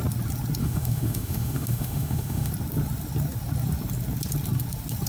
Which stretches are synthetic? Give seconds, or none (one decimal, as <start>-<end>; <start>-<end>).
0.6-2.5